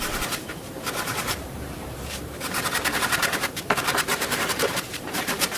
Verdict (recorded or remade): remade